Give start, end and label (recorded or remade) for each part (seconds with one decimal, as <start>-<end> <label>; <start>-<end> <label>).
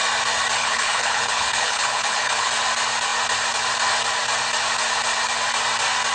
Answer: 0.0-0.6 recorded; 0.6-2.5 remade; 2.5-6.1 recorded